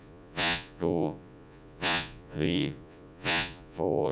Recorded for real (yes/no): no